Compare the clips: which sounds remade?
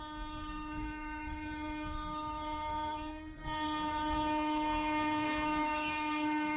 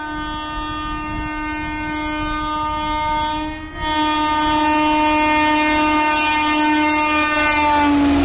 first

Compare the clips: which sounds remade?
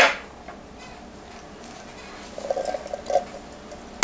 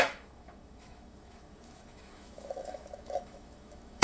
second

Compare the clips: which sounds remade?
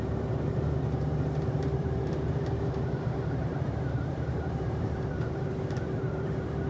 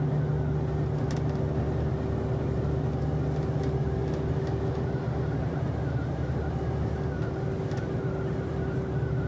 first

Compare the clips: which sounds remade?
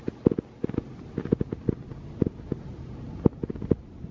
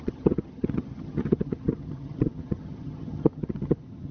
second